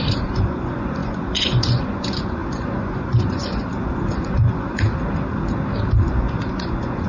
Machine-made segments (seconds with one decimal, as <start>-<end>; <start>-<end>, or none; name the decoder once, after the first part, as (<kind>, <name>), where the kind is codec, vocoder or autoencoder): 0.0-4.7 (vocoder, Vocos); 6.0-7.1

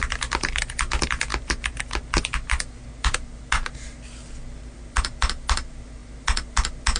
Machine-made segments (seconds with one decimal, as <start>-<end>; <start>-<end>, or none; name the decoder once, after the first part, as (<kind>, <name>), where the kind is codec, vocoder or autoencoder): none

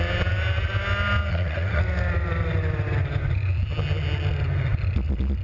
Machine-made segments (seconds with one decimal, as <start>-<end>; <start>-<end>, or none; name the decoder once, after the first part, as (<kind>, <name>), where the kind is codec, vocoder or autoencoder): 1.3-1.8 (codec, SNAC)

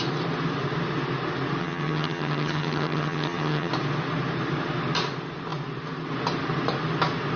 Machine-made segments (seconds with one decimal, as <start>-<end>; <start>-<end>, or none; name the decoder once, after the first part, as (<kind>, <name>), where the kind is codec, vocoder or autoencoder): 1.6-3.7 (vocoder, HiFi-GAN)

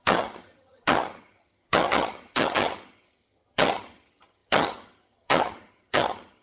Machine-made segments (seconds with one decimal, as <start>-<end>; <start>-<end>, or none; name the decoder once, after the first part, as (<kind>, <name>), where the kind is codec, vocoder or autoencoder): 0.0-6.4 (vocoder, HiFi-GAN)

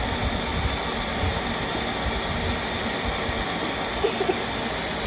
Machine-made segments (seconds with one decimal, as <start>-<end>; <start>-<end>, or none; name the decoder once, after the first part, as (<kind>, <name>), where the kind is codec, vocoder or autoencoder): none

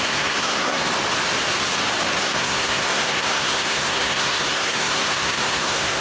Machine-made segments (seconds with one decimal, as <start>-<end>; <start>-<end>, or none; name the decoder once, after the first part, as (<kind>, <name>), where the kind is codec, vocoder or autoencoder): 0.0-0.9 (codec, SNAC); 2.2-6.0

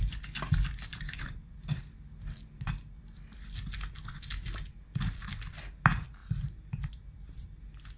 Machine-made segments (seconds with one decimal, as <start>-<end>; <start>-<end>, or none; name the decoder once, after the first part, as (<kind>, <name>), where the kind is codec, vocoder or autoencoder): 6.2-7.6 (vocoder, BigVGAN v2)